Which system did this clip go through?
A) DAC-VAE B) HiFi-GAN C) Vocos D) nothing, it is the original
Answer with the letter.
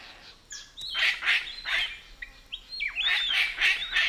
D